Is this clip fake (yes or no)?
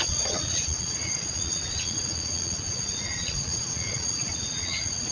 yes